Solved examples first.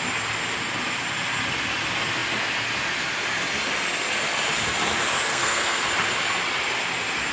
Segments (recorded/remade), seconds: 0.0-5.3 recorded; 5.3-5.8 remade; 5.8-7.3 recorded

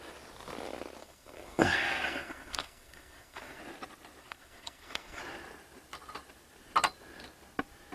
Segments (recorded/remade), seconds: 0.0-1.0 recorded; 1.0-3.6 remade; 3.6-4.2 recorded; 4.2-5.2 remade; 5.2-7.9 recorded

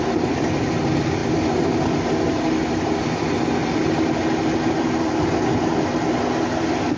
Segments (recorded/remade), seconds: 0.0-7.0 recorded

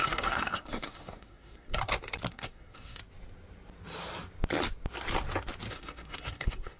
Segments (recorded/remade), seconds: 0.0-1.8 remade; 1.8-2.3 recorded; 2.3-3.0 remade; 3.0-5.7 recorded; 5.7-6.8 remade